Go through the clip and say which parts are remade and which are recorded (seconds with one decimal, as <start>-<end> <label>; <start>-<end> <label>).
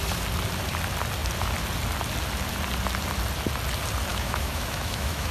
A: 0.0-4.1 recorded; 4.1-5.3 remade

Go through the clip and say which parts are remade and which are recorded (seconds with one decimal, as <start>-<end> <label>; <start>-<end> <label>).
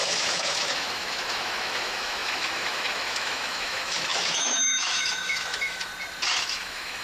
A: 0.0-5.9 remade; 5.9-6.4 recorded; 6.4-7.0 remade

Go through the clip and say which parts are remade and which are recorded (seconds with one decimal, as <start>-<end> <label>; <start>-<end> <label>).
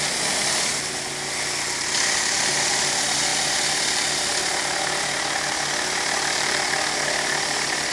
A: 0.0-7.9 recorded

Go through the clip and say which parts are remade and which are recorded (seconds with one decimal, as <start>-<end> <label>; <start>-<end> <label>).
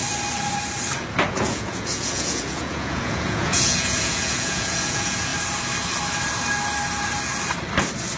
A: 0.0-1.3 recorded; 1.3-5.3 remade; 5.3-8.2 recorded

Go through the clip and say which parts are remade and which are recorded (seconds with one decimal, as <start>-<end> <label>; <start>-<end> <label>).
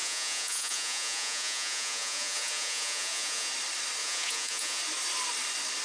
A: 0.0-3.5 remade; 3.5-4.0 recorded; 4.0-4.8 remade; 4.8-5.8 recorded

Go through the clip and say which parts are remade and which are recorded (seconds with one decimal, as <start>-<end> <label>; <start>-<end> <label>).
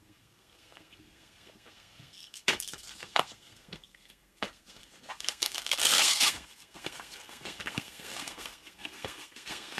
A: 0.0-9.8 remade